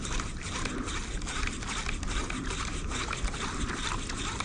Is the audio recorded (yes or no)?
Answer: yes